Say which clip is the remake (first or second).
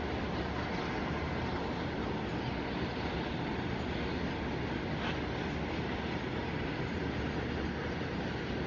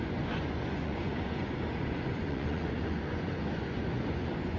second